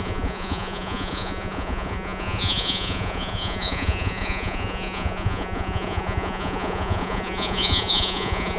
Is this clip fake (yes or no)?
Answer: yes